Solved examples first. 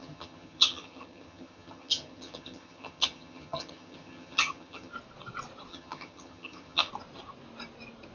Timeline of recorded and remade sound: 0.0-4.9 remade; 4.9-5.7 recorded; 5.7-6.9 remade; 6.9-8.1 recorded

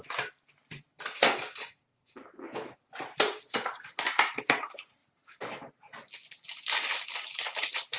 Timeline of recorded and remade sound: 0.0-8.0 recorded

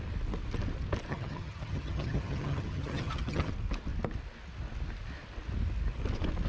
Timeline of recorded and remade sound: 0.0-1.1 recorded; 1.1-3.5 remade; 3.5-6.5 recorded